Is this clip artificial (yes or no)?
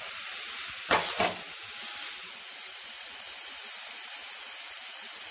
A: no